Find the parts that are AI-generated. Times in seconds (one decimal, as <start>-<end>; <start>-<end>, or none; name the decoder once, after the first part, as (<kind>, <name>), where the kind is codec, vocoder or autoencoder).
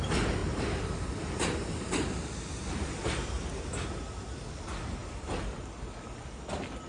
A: none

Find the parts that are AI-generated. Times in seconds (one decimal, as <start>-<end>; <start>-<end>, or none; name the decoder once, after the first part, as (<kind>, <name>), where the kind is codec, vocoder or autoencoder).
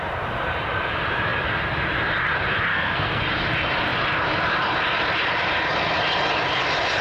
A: 2.7-3.2 (codec, SNAC)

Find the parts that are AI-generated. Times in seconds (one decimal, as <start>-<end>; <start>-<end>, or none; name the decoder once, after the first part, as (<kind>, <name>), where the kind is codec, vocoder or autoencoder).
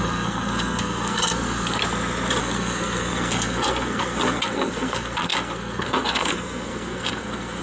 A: 0.0-1.8 (codec, SNAC); 2.4-7.6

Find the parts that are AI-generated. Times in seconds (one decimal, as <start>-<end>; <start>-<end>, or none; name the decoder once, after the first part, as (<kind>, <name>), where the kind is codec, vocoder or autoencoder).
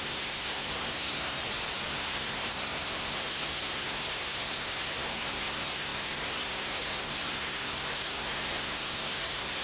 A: 0.0-1.4 (codec, SNAC); 1.9-9.6